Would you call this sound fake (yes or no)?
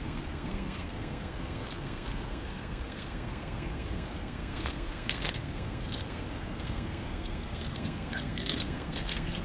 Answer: yes